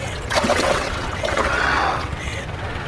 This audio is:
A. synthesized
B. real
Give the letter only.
A